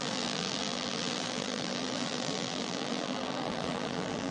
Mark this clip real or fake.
fake